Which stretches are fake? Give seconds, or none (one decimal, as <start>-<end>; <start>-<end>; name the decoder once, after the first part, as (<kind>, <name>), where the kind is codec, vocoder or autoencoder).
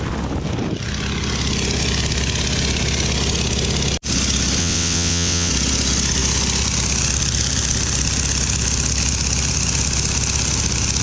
4.6-5.5 (vocoder, WaveNeXt)